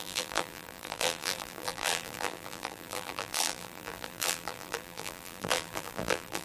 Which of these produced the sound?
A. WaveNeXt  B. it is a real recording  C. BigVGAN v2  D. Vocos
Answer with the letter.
C